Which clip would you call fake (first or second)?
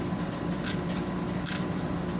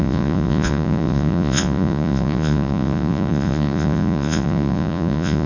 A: second